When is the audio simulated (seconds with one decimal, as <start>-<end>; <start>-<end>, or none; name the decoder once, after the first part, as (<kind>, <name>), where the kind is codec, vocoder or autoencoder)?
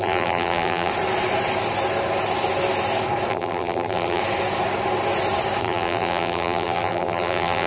0.0-0.9 (vocoder, BigVGAN v2); 3.3-4.2; 5.6-7.7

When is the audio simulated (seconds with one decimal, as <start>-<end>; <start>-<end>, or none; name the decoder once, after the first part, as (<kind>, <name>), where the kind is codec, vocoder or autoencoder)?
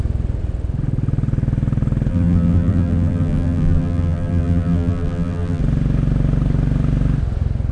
2.1-5.6 (vocoder, BigVGAN v2)